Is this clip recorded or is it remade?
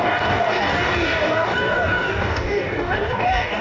remade